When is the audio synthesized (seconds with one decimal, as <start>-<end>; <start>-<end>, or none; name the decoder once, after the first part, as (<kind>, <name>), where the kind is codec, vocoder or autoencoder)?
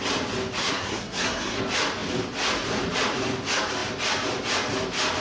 0.6-1.6 (codec, SNAC)